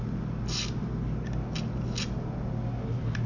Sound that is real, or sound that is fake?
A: real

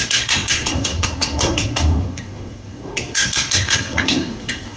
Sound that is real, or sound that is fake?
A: fake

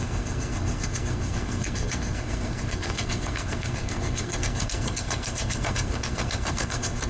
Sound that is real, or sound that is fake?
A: fake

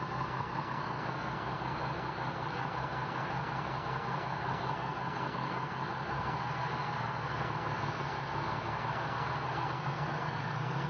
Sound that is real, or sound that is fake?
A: fake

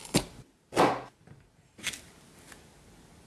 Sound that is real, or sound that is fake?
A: real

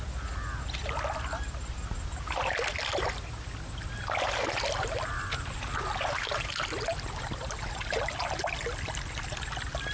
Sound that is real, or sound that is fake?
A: real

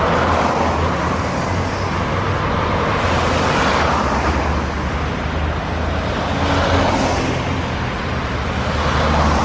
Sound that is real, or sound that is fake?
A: real